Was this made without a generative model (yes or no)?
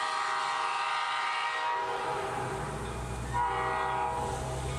yes